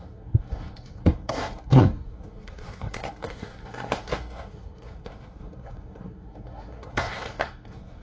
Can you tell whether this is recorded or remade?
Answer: remade